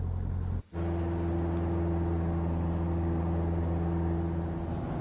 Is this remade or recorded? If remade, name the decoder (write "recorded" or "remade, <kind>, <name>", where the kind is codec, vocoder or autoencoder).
recorded